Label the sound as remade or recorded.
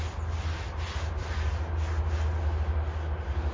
recorded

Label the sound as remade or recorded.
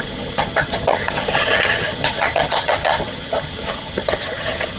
remade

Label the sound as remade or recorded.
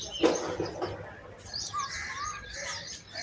recorded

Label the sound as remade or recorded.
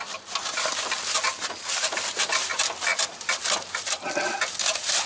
recorded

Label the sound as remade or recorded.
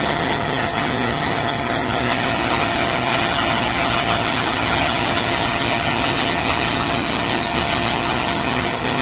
remade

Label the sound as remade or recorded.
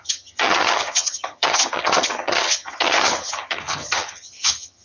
remade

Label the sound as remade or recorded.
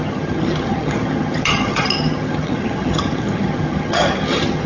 remade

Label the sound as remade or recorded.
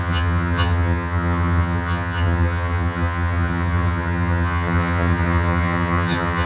remade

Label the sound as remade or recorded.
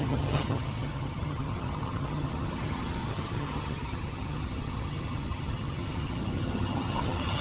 remade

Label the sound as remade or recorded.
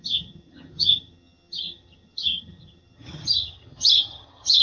remade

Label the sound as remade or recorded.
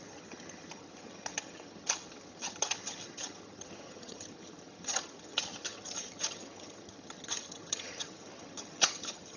remade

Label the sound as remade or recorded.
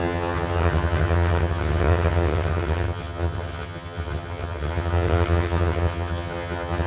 remade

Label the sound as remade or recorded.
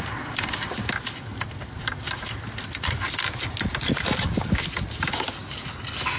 recorded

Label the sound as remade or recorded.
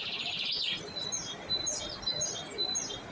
recorded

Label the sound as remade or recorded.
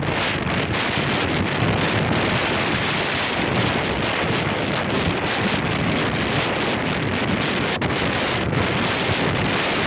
recorded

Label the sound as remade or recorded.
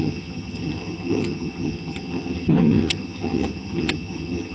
remade